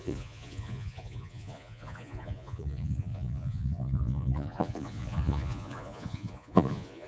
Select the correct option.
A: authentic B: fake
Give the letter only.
B